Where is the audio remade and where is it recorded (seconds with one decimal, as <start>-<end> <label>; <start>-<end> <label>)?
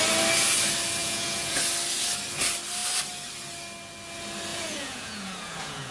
0.0-1.0 recorded; 1.0-1.6 remade; 1.6-4.5 recorded; 4.5-5.9 remade